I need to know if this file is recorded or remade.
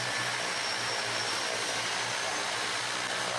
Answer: recorded